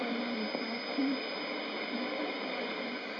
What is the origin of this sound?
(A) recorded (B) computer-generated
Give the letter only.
A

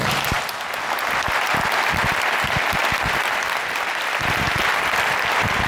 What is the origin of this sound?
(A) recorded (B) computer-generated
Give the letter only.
A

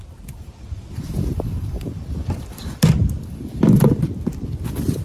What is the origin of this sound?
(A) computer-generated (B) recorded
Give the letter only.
A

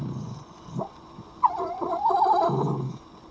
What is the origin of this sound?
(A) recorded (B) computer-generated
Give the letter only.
B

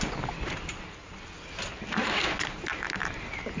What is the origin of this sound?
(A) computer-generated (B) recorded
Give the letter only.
B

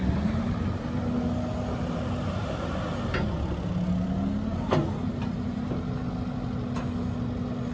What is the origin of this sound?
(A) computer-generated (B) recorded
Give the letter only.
B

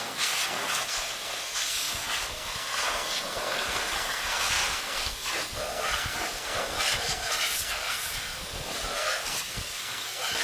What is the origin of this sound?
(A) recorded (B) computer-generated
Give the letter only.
B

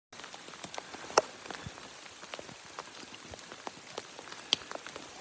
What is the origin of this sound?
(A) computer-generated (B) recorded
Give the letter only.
B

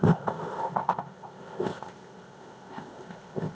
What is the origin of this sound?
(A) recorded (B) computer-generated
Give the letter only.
B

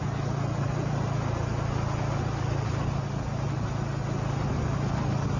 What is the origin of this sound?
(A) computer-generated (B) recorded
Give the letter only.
B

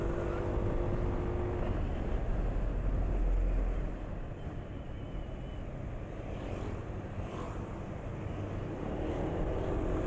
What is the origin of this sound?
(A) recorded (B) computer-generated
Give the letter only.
A